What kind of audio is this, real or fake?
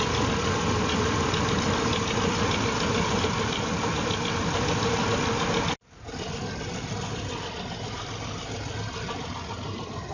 real